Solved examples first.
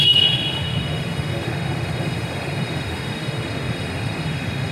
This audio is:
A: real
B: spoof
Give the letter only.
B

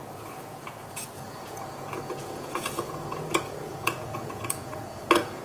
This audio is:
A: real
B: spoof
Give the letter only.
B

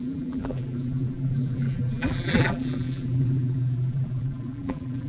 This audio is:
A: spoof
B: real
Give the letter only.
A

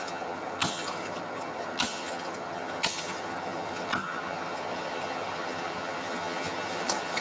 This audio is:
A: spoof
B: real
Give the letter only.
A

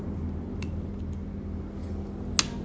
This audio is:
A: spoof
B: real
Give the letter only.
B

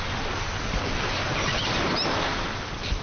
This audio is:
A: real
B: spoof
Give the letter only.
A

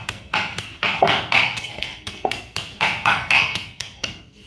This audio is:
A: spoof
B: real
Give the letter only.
A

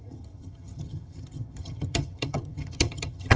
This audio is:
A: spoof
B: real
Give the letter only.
A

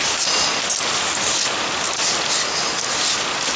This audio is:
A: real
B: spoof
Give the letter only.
A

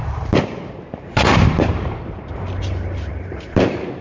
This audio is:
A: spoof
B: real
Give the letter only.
A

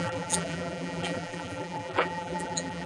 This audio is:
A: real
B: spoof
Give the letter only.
B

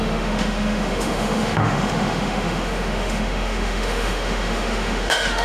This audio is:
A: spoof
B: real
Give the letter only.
A